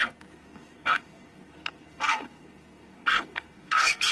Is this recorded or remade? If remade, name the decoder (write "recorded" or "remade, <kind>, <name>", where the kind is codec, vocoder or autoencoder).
remade, codec, SNAC